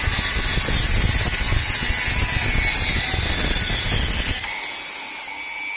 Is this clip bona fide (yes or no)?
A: yes